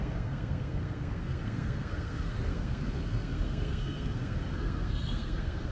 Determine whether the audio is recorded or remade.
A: remade